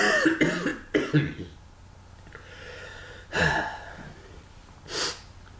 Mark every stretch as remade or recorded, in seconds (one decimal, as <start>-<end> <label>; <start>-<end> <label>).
0.0-5.6 recorded

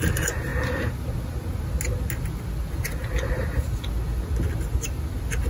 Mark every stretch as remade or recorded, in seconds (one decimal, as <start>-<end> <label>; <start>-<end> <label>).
0.0-5.5 recorded

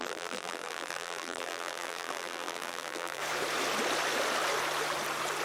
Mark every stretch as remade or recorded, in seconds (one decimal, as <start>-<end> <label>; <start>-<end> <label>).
0.0-3.2 remade; 3.2-5.4 recorded

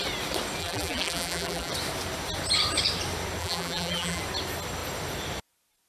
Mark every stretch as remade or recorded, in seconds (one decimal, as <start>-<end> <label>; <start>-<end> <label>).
0.0-0.6 recorded; 0.6-1.7 remade; 1.7-3.4 recorded; 3.4-4.2 remade; 4.2-5.9 recorded

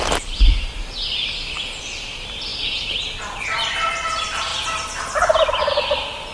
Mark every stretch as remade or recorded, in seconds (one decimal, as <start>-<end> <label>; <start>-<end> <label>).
0.0-0.8 remade; 0.8-1.8 recorded; 1.8-4.5 remade; 4.5-5.0 recorded; 5.0-6.3 remade

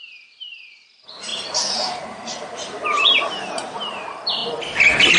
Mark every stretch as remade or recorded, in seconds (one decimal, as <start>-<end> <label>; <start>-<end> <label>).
0.0-4.4 remade; 4.4-5.2 recorded

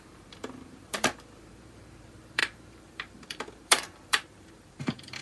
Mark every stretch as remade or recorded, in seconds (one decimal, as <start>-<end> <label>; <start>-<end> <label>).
0.0-5.2 remade

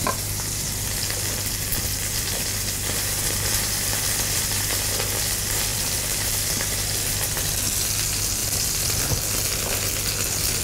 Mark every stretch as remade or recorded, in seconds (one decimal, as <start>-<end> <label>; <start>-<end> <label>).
0.0-1.7 recorded; 1.7-4.9 remade; 4.9-5.7 recorded; 5.7-7.4 remade; 7.4-8.4 recorded; 8.4-9.0 remade; 9.0-10.6 recorded